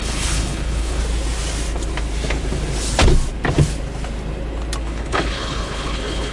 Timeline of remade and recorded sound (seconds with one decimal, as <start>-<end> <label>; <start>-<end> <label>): 0.0-1.0 remade; 1.0-4.8 recorded; 4.8-6.3 remade